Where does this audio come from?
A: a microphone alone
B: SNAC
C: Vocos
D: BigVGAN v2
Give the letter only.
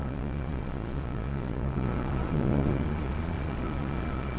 C